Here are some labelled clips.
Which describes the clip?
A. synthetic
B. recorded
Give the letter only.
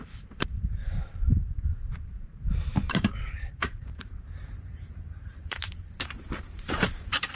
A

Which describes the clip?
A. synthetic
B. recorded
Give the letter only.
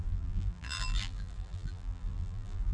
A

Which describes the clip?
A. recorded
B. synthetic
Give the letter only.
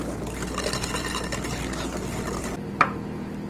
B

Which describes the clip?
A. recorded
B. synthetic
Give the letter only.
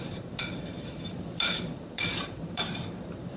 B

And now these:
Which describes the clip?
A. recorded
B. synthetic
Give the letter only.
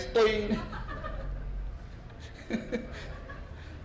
A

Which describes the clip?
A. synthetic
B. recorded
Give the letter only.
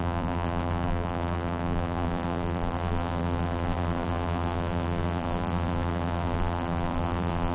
A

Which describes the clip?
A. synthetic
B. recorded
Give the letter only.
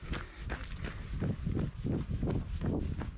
B